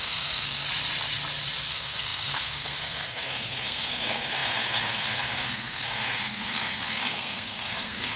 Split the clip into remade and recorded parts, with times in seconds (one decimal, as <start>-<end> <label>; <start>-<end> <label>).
0.0-0.6 remade; 0.6-1.7 recorded; 1.7-8.2 remade